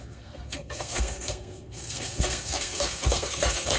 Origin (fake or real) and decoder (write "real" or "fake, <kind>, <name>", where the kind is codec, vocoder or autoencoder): fake, codec, SNAC